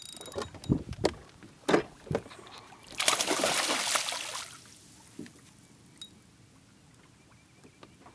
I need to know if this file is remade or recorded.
recorded